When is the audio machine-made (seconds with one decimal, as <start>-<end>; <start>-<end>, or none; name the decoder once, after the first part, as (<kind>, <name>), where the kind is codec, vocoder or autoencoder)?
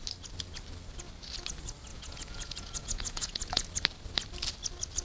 1.9-3.7 (vocoder, Vocos)